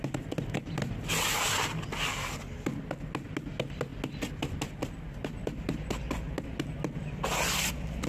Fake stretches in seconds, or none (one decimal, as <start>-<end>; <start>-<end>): none